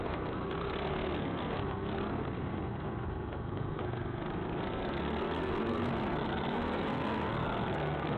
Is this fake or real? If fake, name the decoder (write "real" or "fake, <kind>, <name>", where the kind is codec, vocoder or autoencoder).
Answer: fake, codec, SNAC